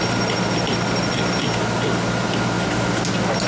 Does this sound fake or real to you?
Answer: real